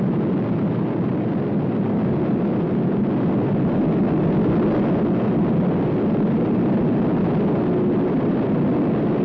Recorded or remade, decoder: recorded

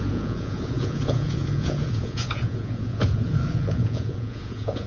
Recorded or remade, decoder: remade, vocoder, Vocos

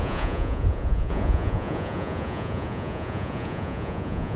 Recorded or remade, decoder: remade, vocoder, Vocos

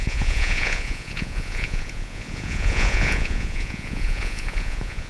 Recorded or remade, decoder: remade, vocoder, Vocos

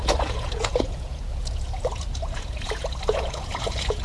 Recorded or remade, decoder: remade, vocoder, Vocos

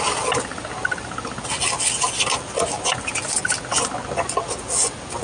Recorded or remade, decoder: recorded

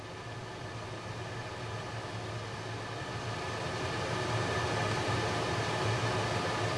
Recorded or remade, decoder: recorded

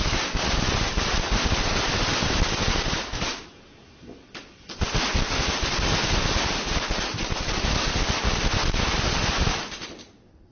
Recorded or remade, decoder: recorded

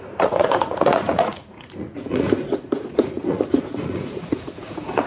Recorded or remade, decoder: remade, vocoder, Vocos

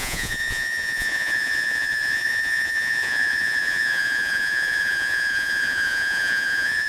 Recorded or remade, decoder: remade, vocoder, Vocos